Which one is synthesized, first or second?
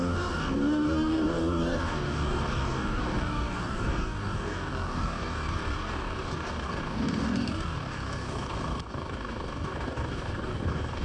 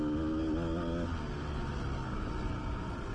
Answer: first